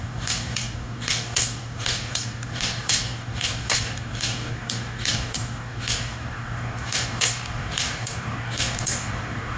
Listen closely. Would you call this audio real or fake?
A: fake